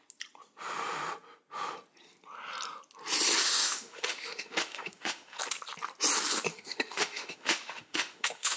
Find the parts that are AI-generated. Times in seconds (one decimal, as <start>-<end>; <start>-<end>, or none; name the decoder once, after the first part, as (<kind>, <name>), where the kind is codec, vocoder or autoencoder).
3.4-5.4 (autoencoder, DAC-VAE); 6.5-8.6